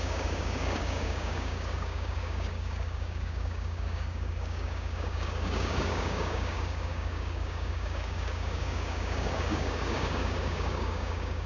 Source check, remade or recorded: remade